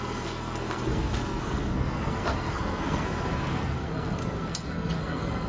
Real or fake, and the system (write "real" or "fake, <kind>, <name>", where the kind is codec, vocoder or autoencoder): fake, codec, SNAC